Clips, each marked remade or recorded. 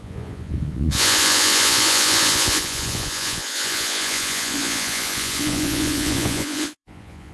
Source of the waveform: remade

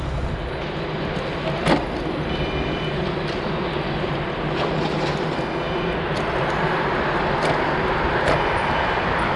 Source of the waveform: recorded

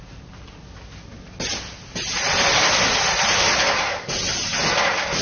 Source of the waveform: recorded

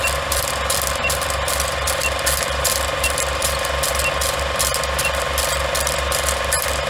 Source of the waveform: recorded